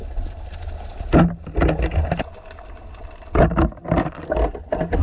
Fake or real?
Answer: real